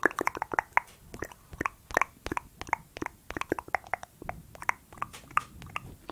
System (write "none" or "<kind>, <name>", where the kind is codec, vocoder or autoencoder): none